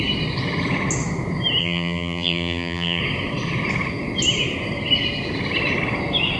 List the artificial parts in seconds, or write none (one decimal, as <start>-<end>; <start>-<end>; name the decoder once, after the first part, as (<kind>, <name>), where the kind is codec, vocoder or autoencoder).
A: 1.6-3.0 (vocoder, BigVGAN v2)